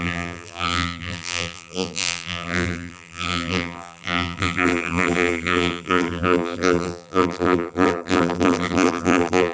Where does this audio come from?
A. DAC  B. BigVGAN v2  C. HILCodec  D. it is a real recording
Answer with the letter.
B